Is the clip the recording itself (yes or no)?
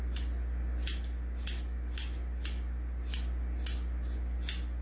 yes